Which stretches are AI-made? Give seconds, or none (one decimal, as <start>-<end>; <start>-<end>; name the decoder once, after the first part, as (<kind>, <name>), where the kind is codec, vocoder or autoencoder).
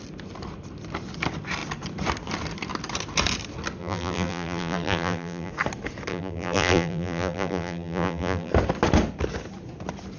3.8-5.5 (vocoder, BigVGAN v2); 6.1-8.5